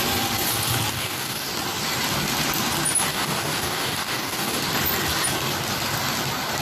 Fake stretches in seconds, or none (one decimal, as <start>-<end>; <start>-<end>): 0.9-1.5; 3.1-4.6